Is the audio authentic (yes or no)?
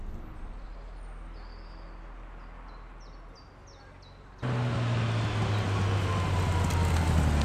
yes